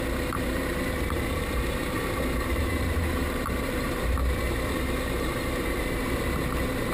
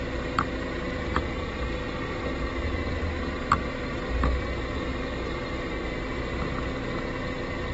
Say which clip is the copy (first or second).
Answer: first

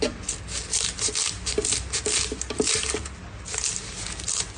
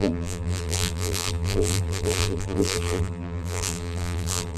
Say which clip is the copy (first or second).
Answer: second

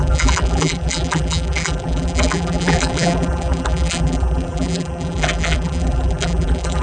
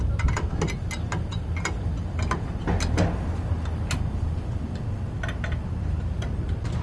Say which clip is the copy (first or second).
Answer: first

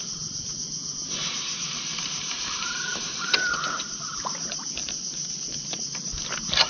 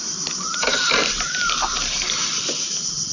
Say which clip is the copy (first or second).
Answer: first